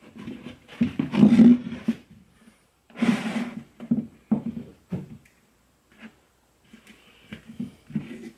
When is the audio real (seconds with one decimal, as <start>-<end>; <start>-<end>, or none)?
0.0-1.6; 3.6-4.7; 6.3-8.4